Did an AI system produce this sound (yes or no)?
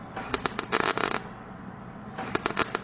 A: no